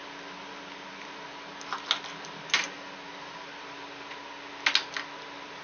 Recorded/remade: recorded